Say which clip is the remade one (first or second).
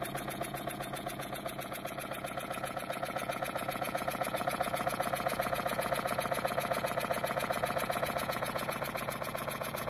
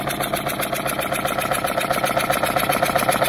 first